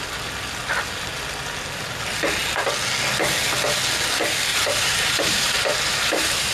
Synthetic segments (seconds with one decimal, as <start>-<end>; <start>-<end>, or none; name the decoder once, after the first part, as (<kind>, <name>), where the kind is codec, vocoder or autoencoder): 4.5-6.5 (vocoder, BigVGAN v2)